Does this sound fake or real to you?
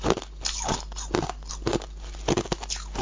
real